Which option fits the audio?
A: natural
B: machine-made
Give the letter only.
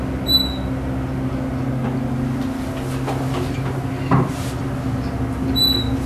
A